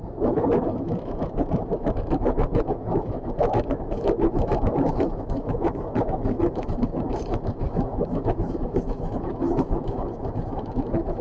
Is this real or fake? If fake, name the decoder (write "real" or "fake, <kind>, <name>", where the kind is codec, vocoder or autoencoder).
fake, autoencoder, DAC-VAE